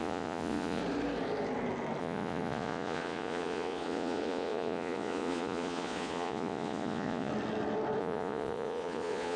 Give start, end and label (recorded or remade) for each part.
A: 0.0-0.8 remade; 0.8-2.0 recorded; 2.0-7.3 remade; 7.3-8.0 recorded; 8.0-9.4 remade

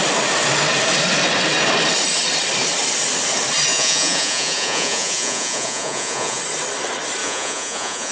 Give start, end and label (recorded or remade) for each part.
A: 0.0-3.7 recorded; 3.7-6.4 remade; 6.4-7.2 recorded; 7.2-8.1 remade